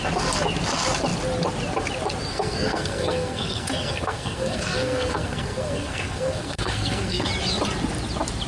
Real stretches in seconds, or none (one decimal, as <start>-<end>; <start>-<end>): 0.0-2.3; 7.3-8.5